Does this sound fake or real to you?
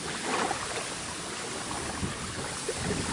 real